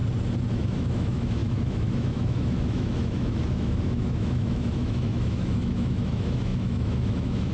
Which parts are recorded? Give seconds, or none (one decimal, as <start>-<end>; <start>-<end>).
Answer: 0.0-0.5